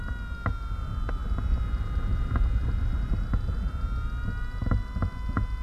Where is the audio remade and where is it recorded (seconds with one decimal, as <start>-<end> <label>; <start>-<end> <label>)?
0.0-5.6 recorded